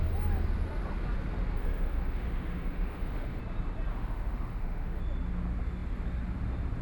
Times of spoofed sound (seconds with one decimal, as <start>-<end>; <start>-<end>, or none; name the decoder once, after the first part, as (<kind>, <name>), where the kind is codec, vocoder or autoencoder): 1.6-3.4 (autoencoder, DAC-VAE); 3.9-5.0